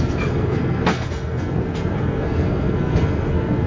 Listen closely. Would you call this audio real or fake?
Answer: fake